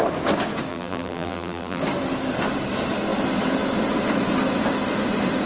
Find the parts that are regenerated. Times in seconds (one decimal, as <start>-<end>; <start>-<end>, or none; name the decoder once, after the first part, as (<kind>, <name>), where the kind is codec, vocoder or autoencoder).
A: 0.7-1.8 (vocoder, BigVGAN v2)